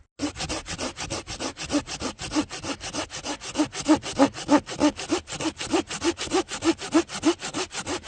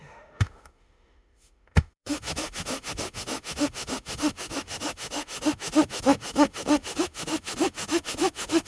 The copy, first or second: second